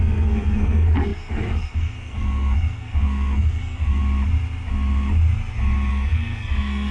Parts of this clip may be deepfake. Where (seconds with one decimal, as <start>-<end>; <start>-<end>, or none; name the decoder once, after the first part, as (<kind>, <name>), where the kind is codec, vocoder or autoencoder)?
0.0-4.0 (codec, SNAC); 5.9-6.9